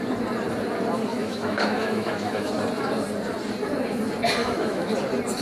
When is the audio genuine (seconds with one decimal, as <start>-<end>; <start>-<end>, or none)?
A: 0.0-1.1; 2.5-4.4; 4.9-5.4